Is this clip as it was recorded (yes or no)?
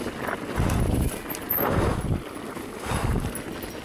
yes